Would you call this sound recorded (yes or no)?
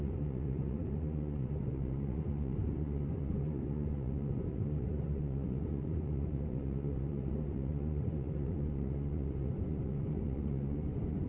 no